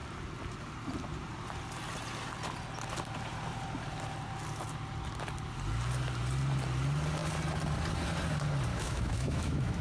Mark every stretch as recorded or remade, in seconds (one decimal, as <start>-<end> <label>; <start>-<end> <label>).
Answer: 0.0-8.7 recorded; 8.7-9.8 remade